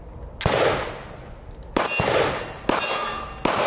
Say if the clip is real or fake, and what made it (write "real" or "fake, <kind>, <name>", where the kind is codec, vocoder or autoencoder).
real